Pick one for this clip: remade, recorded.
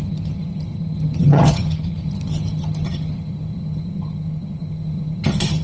remade